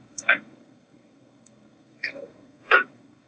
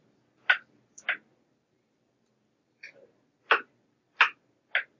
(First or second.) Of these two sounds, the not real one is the first